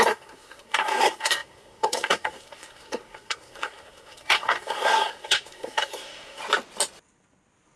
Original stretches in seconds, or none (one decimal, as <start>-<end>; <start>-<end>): 6.4-7.8